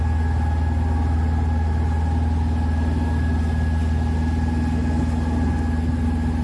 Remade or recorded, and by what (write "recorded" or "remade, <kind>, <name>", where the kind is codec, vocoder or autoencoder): recorded